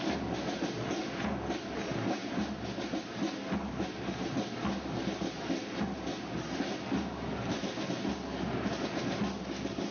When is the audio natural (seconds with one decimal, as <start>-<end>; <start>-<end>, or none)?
0.0-9.9